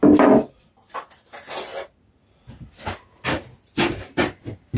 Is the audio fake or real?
real